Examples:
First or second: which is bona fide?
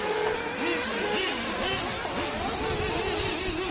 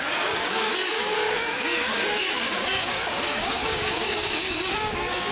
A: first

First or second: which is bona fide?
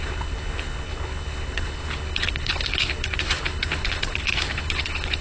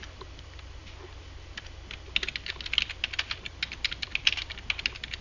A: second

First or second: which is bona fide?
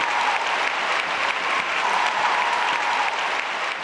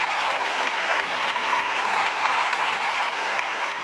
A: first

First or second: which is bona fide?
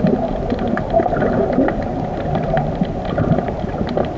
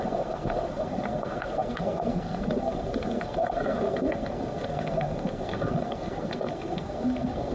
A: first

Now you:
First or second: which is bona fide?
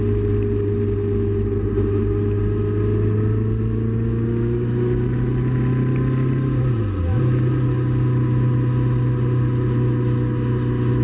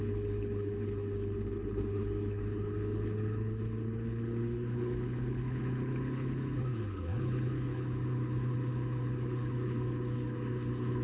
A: first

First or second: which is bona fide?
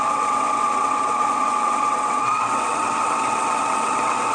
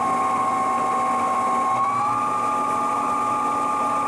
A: second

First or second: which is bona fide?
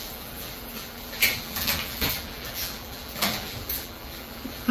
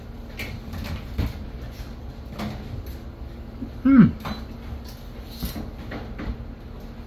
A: second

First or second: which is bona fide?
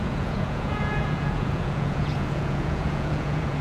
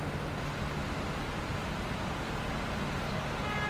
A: second